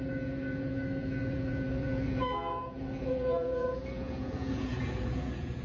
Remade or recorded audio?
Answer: remade